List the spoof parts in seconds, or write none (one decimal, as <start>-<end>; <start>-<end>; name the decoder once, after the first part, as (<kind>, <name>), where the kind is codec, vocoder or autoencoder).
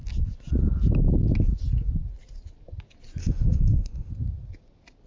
3.2-4.1 (autoencoder, DAC-VAE)